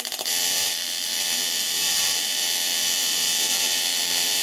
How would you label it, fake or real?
fake